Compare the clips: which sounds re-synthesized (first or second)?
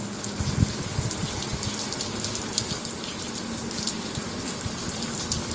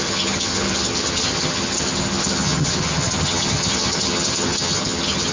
second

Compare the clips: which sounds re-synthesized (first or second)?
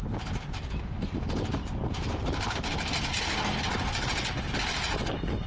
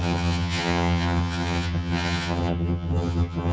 second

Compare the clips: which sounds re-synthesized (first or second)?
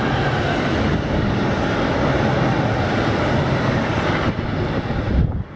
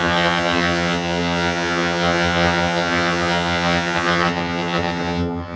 second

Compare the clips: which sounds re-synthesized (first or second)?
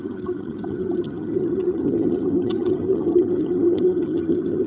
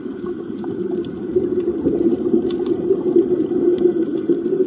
first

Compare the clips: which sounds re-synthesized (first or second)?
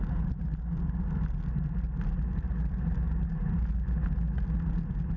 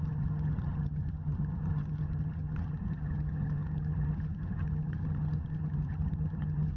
second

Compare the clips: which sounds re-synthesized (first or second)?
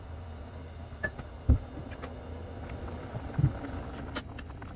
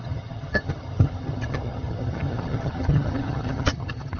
second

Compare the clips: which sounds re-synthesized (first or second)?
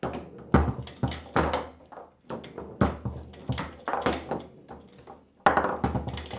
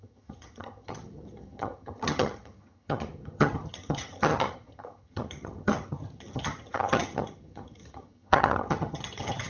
second